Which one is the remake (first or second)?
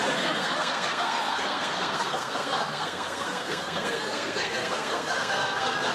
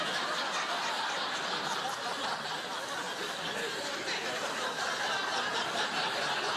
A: first